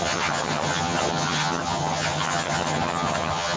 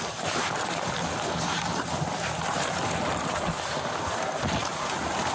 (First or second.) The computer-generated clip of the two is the first